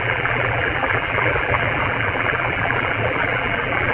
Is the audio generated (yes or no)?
yes